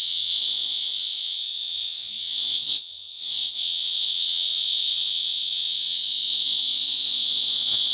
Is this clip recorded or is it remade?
remade